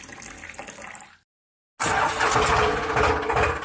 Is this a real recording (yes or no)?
yes